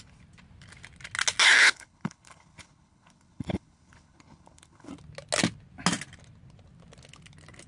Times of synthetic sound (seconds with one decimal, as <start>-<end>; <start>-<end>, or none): 1.6-4.9